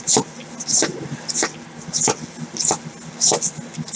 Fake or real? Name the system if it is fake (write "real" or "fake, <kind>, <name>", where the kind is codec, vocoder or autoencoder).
real